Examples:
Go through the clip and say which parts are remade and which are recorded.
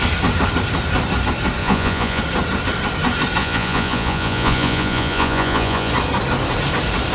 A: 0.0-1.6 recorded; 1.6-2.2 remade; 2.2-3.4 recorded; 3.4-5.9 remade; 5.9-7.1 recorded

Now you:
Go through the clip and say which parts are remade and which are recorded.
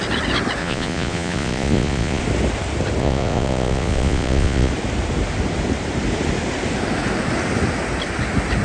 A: 0.0-0.6 recorded; 0.6-2.2 remade; 2.2-3.0 recorded; 3.0-4.7 remade; 4.7-8.6 recorded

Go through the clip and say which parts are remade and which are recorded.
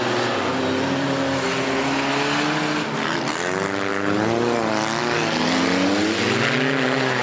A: 0.0-7.2 recorded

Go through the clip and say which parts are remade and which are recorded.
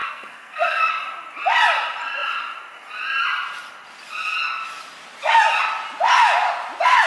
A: 0.0-0.9 remade; 0.9-7.1 recorded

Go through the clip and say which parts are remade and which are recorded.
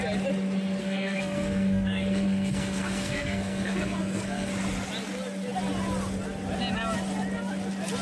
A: 0.0-0.8 recorded; 0.8-4.5 remade; 4.5-8.0 recorded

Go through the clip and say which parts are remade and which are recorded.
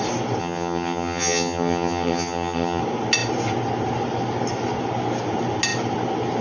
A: 0.0-0.4 recorded; 0.4-2.8 remade; 2.8-6.4 recorded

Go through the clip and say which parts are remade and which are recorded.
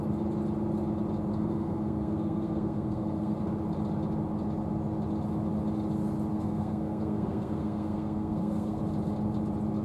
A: 0.0-1.3 recorded; 1.3-3.4 remade; 3.4-6.3 recorded; 6.3-8.8 remade; 8.8-9.8 recorded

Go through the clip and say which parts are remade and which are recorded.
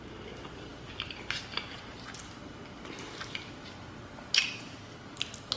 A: 0.0-5.6 recorded